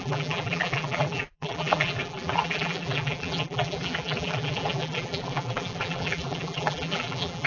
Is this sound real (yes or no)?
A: no